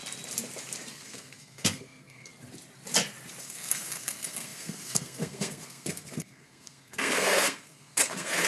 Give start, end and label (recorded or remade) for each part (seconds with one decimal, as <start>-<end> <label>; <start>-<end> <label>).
0.0-0.9 recorded; 0.9-2.3 remade; 2.3-3.4 recorded; 3.4-8.5 remade